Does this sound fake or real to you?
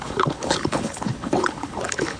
fake